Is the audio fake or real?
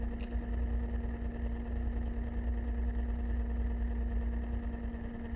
real